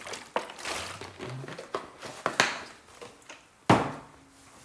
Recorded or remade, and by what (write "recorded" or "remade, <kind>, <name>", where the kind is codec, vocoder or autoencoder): recorded